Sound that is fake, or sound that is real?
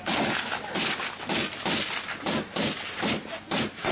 real